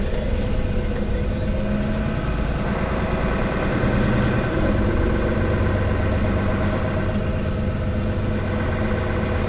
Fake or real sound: real